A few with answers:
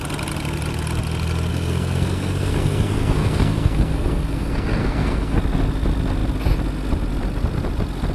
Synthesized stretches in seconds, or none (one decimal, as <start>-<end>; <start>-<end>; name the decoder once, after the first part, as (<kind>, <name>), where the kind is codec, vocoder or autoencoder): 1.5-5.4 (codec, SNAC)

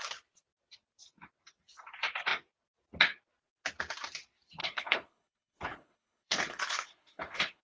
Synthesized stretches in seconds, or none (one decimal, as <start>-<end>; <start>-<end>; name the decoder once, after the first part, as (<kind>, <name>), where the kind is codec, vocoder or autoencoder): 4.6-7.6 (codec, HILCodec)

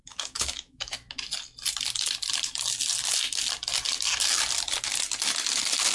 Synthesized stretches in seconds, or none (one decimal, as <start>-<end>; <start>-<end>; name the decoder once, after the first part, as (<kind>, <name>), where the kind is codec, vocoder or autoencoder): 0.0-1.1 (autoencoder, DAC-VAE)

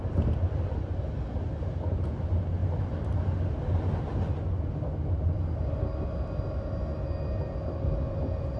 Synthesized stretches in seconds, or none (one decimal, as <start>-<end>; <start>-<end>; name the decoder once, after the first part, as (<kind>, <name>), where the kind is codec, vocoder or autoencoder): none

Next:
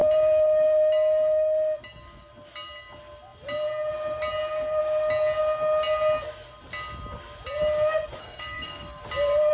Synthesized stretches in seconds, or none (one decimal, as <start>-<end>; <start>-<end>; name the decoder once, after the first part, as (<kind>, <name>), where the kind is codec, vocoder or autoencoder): 8.2-9.0 (codec, SNAC)

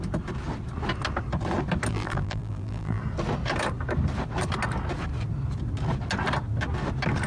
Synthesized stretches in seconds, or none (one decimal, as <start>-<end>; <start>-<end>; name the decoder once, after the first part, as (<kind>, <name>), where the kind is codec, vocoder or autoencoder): 1.9-3.0 (vocoder, BigVGAN v2)